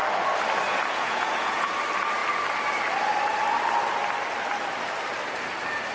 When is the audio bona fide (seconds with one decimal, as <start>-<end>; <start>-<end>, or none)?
0.0-0.7; 1.7-5.9